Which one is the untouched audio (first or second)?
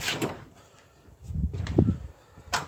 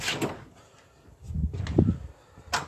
second